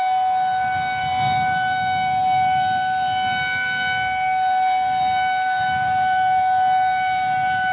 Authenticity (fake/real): real